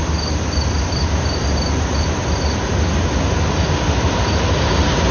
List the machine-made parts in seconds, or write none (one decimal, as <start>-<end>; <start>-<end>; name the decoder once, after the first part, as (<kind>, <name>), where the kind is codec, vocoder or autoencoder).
0.0-2.2 (vocoder, BigVGAN v2); 4.0-5.1